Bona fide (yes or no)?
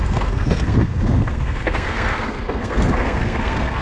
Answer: no